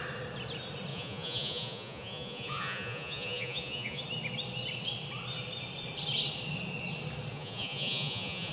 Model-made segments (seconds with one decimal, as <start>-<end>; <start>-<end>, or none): 0.9-4.0; 7.3-8.5